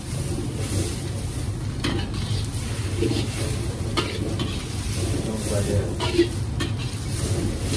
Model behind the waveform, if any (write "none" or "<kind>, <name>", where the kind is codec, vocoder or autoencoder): none